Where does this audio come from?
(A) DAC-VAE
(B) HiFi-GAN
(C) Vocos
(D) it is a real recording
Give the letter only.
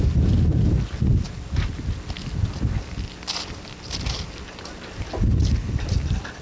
D